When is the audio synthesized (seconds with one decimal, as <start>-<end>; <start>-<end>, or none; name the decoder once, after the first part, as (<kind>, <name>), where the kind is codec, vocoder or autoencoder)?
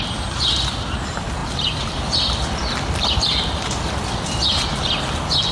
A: none